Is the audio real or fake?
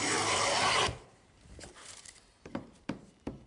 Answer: fake